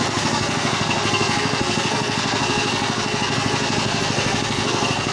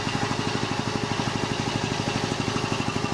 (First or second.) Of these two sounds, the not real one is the first